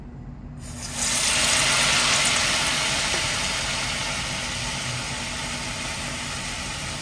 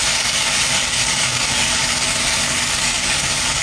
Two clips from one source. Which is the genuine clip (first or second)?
first